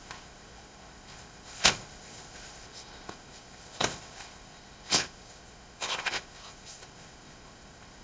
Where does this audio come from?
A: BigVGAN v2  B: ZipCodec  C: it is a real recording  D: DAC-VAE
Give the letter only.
B